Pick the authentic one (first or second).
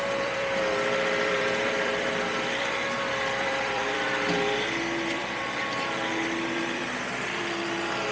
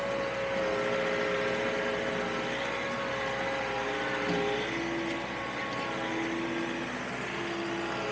second